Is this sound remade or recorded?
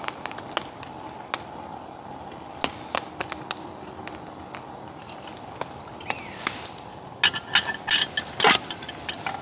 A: recorded